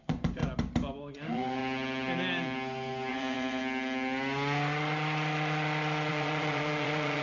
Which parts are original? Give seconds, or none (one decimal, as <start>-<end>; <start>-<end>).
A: 0.4-1.0; 1.6-3.1; 3.6-6.1